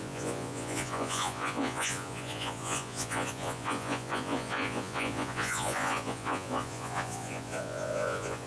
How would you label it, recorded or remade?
remade